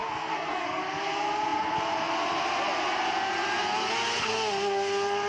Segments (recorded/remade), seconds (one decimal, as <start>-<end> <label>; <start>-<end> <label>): 0.0-0.8 remade; 0.8-5.3 recorded